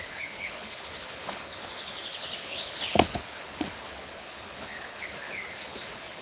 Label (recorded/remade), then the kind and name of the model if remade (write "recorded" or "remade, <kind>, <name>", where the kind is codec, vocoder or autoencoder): remade, codec, HILCodec